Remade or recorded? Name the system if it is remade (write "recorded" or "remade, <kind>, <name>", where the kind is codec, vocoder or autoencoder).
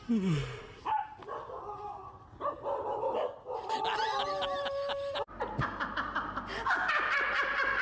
recorded